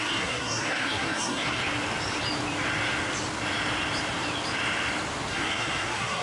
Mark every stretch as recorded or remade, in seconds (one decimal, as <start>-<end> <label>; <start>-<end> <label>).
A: 0.0-1.6 remade; 1.6-5.3 recorded; 5.3-6.2 remade